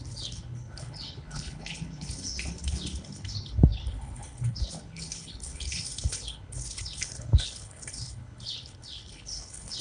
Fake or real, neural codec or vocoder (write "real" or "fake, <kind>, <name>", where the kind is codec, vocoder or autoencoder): fake, codec, HILCodec